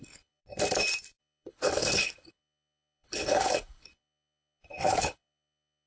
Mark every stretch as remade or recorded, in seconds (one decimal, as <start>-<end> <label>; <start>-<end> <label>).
0.0-0.4 remade; 0.4-1.2 recorded; 1.2-5.9 remade